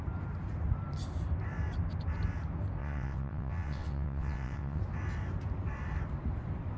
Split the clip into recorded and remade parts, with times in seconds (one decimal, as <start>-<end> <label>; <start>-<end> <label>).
0.0-2.8 recorded; 2.8-4.8 remade; 4.8-6.8 recorded